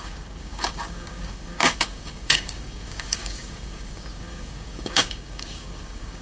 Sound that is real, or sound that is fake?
fake